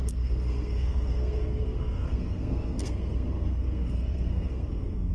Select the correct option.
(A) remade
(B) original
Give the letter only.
A